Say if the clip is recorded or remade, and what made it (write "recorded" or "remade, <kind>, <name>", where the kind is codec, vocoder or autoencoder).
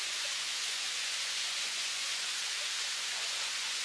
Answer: remade, vocoder, Vocos